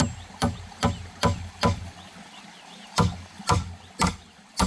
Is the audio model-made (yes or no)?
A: no